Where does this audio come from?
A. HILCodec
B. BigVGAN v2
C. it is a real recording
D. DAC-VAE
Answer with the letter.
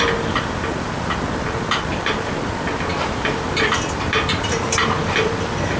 B